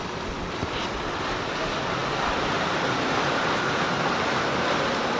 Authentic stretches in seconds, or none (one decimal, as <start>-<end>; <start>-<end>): 0.0-5.2